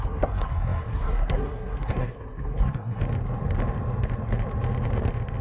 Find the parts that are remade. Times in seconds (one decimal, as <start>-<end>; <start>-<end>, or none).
0.0-3.0